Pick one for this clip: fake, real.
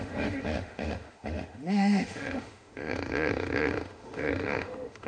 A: fake